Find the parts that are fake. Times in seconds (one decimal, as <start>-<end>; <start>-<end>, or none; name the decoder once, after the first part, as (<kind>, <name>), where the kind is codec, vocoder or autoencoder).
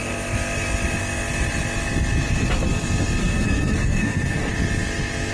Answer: 3.2-4.5 (codec, SNAC)